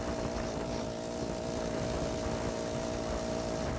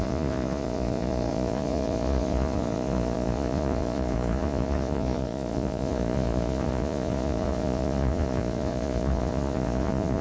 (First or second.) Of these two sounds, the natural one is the first